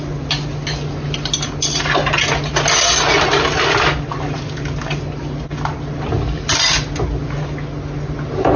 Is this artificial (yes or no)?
no